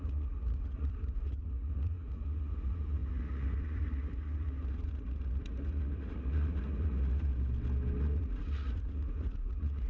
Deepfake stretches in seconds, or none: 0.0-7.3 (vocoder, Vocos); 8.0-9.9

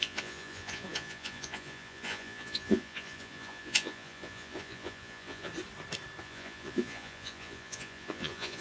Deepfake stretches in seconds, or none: 0.0-5.5 (vocoder, Vocos); 6.2-8.6

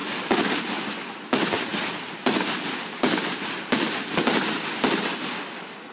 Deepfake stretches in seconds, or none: none

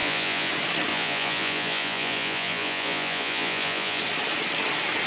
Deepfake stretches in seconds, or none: 0.0-0.5 (vocoder, Vocos); 0.9-4.0

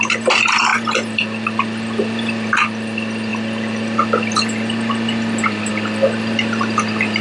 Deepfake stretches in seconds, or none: none

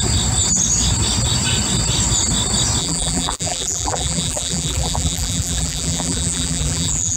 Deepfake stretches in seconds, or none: 2.8-7.2 (vocoder, BigVGAN v2)

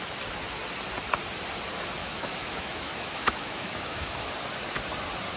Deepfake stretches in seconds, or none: 2.0-4.3 (autoencoder, DAC-VAE)

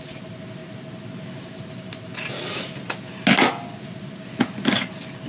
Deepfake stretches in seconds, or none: none